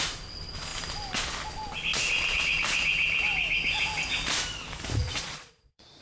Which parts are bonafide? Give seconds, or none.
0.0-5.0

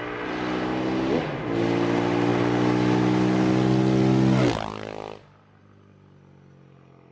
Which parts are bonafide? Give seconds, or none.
0.0-7.1

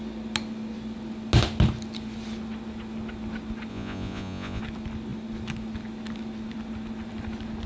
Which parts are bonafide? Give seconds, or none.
0.0-3.7; 4.6-7.7